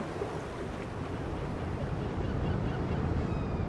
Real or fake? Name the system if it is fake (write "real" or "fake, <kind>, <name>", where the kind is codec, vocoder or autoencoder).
real